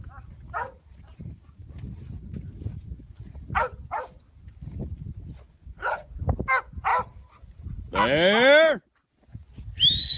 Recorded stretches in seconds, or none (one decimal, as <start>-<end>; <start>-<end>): 0.0-10.2